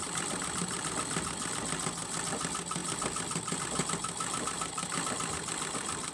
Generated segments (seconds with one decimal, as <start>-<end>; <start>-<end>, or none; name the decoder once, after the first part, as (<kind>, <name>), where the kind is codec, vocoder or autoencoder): 2.8-6.1 (vocoder, BigVGAN v2)